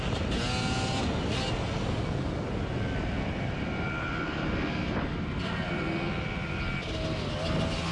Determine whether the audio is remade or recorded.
recorded